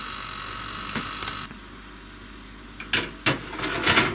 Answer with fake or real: real